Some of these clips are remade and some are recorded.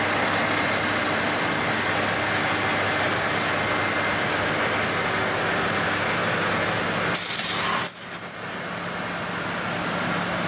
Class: recorded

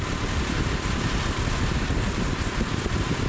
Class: remade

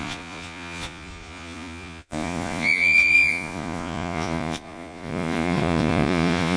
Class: remade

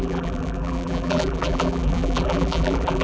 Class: remade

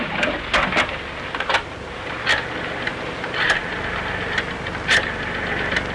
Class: recorded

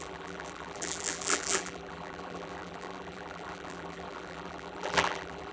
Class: remade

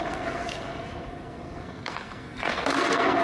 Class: remade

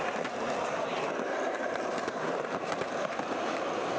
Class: recorded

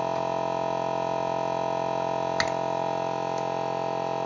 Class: recorded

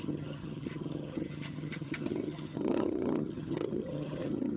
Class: remade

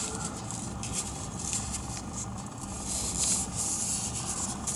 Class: remade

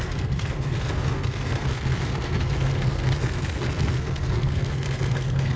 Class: remade